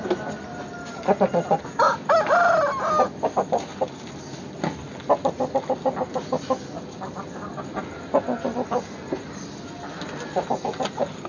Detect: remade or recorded recorded